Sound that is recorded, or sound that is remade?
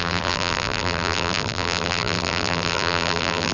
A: remade